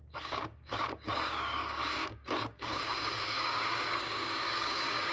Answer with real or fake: fake